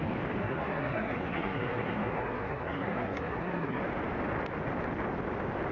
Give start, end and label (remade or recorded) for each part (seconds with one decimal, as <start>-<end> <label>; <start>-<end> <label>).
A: 0.0-0.4 recorded; 0.4-3.8 remade; 3.8-5.7 recorded